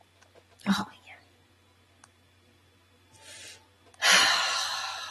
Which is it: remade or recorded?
recorded